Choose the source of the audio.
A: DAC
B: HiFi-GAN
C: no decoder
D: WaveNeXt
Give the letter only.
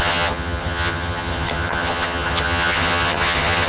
B